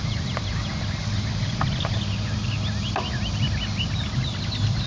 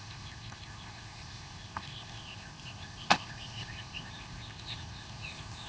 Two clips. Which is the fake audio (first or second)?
second